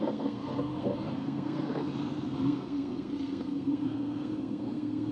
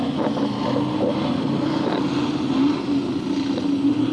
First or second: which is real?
second